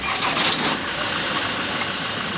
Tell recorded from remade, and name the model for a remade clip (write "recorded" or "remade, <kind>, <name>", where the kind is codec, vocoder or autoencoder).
recorded